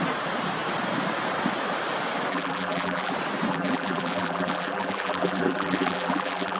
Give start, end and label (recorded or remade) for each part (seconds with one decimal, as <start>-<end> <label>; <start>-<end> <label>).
0.0-2.3 recorded; 2.3-3.1 remade; 3.1-3.5 recorded; 3.5-6.6 remade